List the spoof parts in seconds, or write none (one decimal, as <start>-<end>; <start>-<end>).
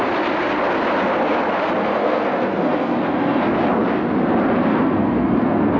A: 1.8-3.5; 4.7-5.8